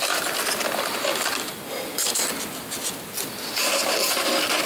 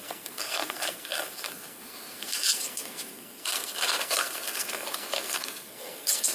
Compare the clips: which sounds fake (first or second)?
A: second